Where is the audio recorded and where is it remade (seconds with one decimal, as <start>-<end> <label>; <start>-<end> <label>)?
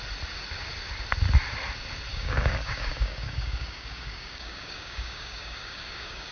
0.0-2.1 recorded; 2.1-6.3 remade